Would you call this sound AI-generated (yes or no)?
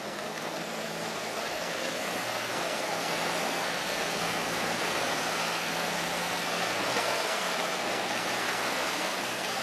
yes